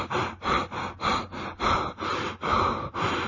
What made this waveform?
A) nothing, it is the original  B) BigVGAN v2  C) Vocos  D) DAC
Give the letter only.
A